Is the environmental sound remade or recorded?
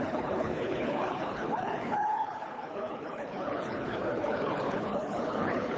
remade